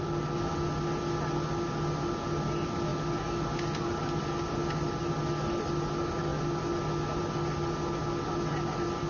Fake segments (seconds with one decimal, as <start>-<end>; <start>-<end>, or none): none